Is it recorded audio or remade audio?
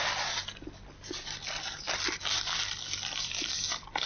recorded